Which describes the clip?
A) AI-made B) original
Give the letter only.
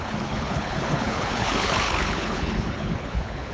A